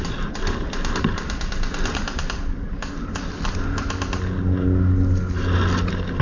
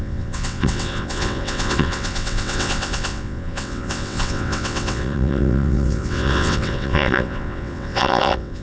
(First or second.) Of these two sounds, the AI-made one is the second